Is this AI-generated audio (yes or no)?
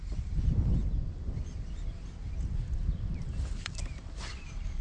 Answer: yes